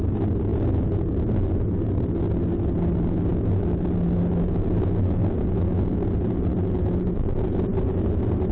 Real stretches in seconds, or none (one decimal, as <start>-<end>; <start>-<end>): 0.0-8.5